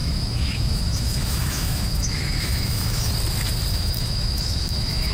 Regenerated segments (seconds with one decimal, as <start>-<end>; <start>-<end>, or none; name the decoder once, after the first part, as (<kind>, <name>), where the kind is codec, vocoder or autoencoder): 0.0-3.1 (autoencoder, DAC-VAE); 3.7-5.1

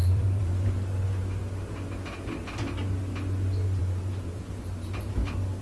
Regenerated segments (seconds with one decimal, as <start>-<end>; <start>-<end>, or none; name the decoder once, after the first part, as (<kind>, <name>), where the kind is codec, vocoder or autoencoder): 0.0-0.7 (vocoder, BigVGAN v2); 3.8-5.1

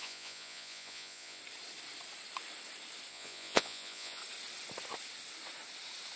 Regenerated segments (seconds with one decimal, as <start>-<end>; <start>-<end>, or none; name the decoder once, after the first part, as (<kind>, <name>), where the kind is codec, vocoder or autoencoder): 0.0-1.4 (vocoder, Vocos); 3.1-4.2

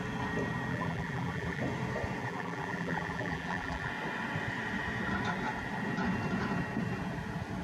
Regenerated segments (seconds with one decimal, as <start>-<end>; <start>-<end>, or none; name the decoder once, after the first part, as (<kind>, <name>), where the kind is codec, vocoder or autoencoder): 0.7-1.6 (vocoder, BigVGAN v2); 2.2-3.9

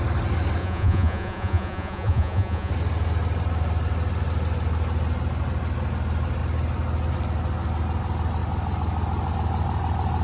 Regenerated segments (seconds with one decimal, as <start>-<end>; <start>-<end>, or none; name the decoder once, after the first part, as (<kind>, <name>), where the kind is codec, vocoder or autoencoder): 0.6-2.7 (vocoder, Vocos)

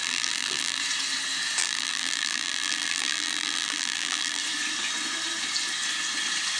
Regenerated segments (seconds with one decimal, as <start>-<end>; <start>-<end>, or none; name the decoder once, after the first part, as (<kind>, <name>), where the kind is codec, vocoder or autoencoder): 0.0-0.8 (vocoder, BigVGAN v2); 1.6-4.4

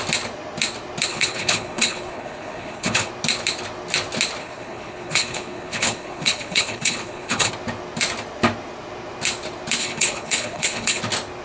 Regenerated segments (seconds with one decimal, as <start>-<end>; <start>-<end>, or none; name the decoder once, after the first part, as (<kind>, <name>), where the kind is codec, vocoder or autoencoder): 1.1-3.1 (codec, HILCodec); 4.4-7.5; 9.8-11.0

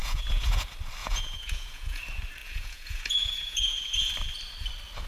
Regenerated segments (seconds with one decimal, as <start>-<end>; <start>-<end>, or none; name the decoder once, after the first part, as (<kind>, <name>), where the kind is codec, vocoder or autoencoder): 0.0-0.6 (vocoder, Vocos); 1.0-2.0; 2.4-4.1